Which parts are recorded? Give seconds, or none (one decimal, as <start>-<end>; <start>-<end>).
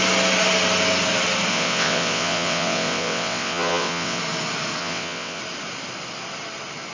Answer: 0.0-1.5; 4.2-4.8; 5.4-6.9